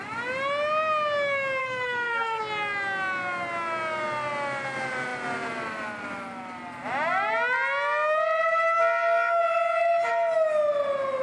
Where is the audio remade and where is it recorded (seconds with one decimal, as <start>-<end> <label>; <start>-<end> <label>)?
0.0-1.6 recorded; 1.6-2.4 remade; 2.4-11.2 recorded

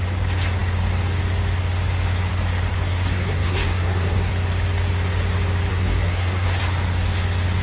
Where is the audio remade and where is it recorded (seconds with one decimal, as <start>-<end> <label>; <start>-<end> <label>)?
0.0-2.7 recorded; 2.7-4.3 remade; 4.3-5.7 recorded; 5.7-6.6 remade; 6.6-7.6 recorded

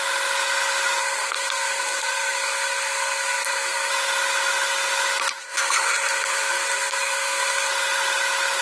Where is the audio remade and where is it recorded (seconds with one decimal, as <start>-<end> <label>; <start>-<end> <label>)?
0.0-1.0 recorded; 1.0-3.9 remade; 3.9-5.4 recorded; 5.4-7.7 remade; 7.7-8.6 recorded

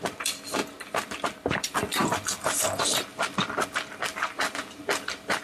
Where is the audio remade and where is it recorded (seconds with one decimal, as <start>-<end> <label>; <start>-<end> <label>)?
0.0-5.4 recorded

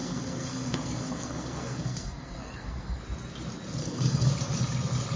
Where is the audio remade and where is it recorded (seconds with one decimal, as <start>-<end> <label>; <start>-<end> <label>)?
0.0-3.0 remade; 3.0-3.8 recorded; 3.8-4.3 remade; 4.3-5.2 recorded

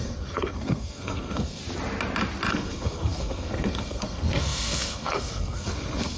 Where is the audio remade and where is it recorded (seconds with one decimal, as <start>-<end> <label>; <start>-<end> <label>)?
0.0-1.6 remade; 1.6-2.5 recorded; 2.5-6.2 remade

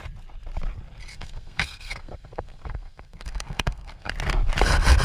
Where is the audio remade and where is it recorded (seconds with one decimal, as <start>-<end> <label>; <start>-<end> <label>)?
0.0-1.1 recorded; 1.1-4.1 remade; 4.1-5.0 recorded